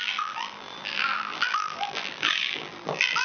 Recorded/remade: remade